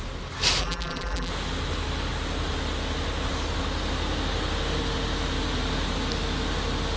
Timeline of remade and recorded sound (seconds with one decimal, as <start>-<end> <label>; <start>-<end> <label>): 0.0-0.6 recorded; 0.6-1.3 remade; 1.3-7.0 recorded